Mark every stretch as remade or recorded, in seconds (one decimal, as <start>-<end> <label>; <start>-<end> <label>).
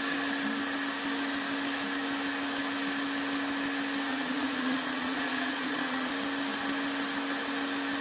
0.0-4.1 recorded; 4.1-6.1 remade; 6.1-8.0 recorded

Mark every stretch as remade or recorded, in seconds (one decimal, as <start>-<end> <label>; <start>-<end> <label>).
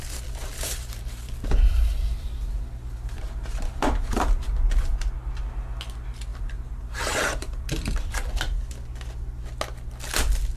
0.0-0.4 recorded; 0.4-4.9 remade; 4.9-6.3 recorded; 6.3-8.3 remade; 8.3-10.6 recorded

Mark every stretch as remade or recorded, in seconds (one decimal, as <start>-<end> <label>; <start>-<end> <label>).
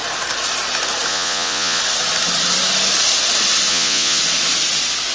0.0-1.1 recorded; 1.1-1.8 remade; 1.8-3.7 recorded; 3.7-4.2 remade; 4.2-5.1 recorded